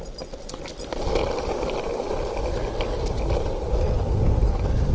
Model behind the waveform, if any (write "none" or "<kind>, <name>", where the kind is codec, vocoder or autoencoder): none